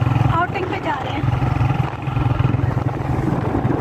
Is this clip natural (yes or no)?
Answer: no